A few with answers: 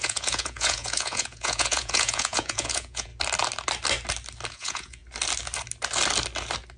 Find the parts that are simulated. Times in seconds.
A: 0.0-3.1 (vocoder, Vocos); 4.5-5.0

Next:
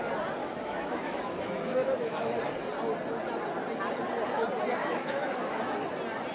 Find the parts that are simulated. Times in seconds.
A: 0.4-2.4 (autoencoder, DAC-VAE); 4.8-5.6

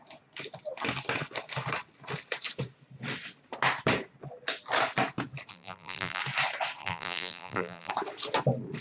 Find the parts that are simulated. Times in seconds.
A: 5.5-6.2 (vocoder, BigVGAN v2); 6.8-7.9

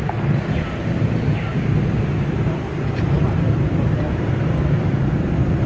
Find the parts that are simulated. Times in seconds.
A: none

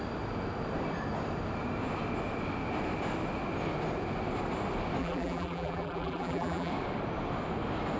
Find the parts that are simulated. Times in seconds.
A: 5.0-6.7 (vocoder, BigVGAN v2)

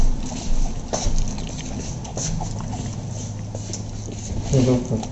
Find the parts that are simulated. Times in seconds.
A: none

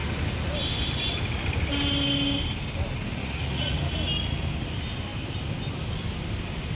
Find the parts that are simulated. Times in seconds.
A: 3.2-3.8 (vocoder, Vocos)